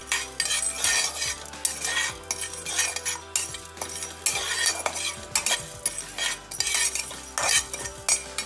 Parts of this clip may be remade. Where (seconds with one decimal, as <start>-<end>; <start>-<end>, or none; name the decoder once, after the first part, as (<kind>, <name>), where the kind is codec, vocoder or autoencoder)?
none